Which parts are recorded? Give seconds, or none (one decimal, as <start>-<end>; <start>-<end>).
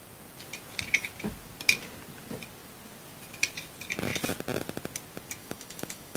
0.0-5.4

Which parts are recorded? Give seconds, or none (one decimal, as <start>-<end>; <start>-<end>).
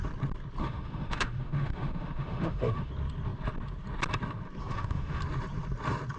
0.0-0.6; 2.9-4.7; 5.2-6.2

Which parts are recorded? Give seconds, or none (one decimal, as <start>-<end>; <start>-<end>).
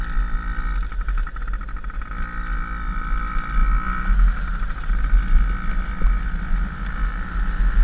0.0-7.8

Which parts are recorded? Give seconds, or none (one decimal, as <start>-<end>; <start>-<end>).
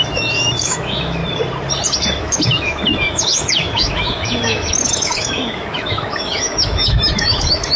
1.2-2.2